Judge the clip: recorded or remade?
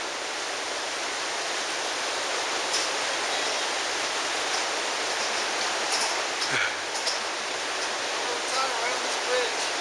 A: recorded